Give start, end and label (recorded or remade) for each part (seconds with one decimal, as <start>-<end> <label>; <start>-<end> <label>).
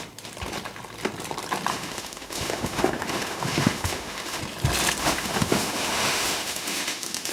0.0-1.7 recorded; 1.7-4.4 remade; 4.4-5.0 recorded; 5.0-7.3 remade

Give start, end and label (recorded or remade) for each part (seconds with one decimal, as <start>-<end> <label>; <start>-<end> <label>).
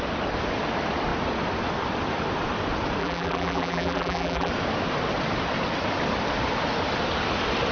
0.0-3.0 recorded; 3.0-4.5 remade; 4.5-7.7 recorded